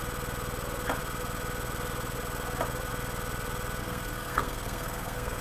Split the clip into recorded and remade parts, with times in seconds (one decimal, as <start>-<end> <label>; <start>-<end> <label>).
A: 0.0-3.8 recorded; 3.8-5.4 remade